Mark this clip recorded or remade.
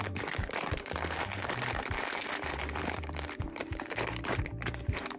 remade